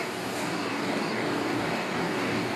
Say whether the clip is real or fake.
fake